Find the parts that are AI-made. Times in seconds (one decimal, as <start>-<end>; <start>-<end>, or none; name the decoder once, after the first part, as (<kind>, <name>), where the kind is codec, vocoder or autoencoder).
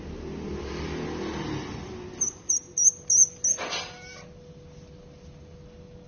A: none